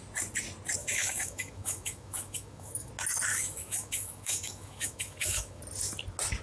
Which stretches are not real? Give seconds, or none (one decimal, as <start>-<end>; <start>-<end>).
0.8-2.9; 3.3-5.6